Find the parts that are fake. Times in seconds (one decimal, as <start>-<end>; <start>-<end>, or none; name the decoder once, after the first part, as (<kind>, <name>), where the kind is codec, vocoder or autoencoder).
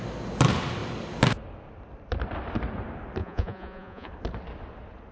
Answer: 3.2-4.1 (vocoder, Vocos)